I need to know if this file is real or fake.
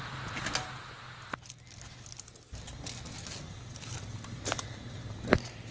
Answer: real